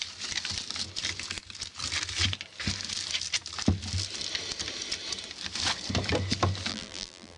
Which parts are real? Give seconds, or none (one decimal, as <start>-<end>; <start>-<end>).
0.0-6.7